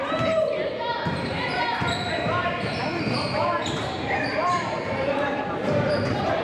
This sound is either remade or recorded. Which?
remade